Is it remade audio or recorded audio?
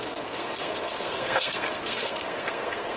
remade